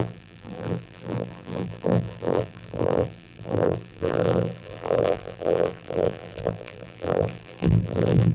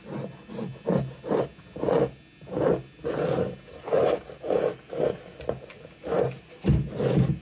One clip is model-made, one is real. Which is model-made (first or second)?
first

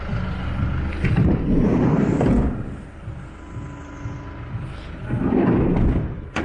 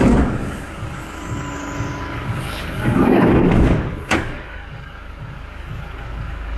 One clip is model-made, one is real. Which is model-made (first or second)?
second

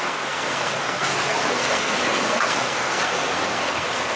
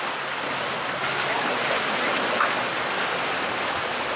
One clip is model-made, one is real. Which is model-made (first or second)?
first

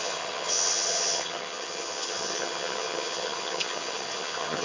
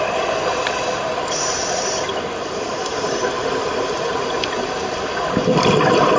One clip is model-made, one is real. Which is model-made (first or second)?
first